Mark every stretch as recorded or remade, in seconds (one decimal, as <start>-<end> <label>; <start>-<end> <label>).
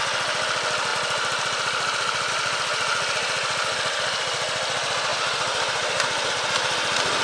0.0-5.1 recorded; 5.1-6.3 remade; 6.3-7.2 recorded